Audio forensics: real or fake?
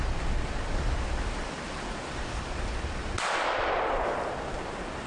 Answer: real